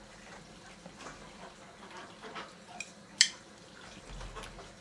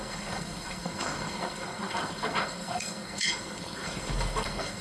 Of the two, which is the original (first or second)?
first